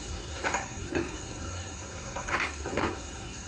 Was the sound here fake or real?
fake